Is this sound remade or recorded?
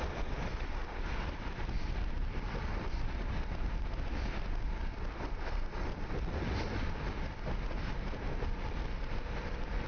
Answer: recorded